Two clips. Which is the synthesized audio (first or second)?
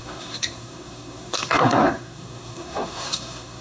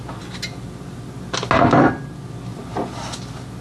first